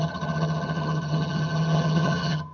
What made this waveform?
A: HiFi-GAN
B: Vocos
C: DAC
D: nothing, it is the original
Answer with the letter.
A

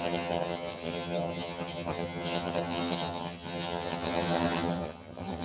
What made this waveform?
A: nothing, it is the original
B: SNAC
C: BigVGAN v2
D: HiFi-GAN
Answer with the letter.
D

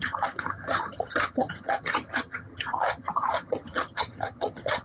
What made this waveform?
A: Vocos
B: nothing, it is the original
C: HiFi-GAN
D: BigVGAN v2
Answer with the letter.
C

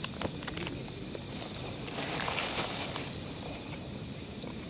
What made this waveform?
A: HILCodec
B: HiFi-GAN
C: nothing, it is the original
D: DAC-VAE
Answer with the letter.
C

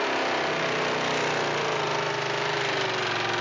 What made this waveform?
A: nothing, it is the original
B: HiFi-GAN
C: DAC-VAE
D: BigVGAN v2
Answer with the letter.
A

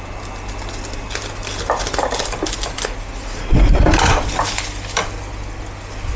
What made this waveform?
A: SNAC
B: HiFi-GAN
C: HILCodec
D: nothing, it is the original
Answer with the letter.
D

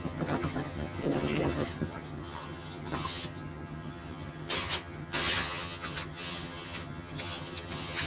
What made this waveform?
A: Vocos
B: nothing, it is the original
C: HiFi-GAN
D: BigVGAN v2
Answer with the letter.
C